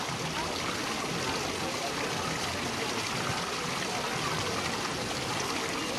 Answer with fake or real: real